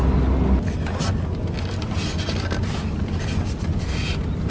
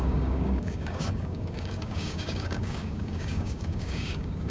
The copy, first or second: second